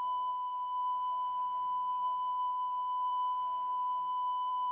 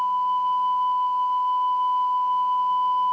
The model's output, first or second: first